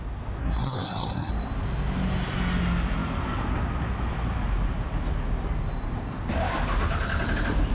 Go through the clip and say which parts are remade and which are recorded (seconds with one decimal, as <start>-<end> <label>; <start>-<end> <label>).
0.0-0.4 recorded; 0.4-1.3 remade; 1.3-7.7 recorded